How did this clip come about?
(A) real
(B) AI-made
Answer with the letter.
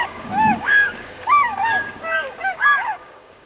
B